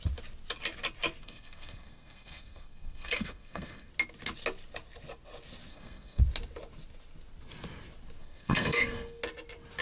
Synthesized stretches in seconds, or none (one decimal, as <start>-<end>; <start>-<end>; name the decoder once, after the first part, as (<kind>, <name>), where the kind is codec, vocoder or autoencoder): 1.2-3.9 (codec, SNAC); 5.7-6.2; 8.2-9.2